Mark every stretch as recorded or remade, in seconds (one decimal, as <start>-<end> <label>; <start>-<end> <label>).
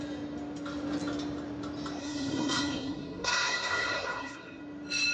0.0-2.0 recorded; 2.0-4.6 remade; 4.6-5.1 recorded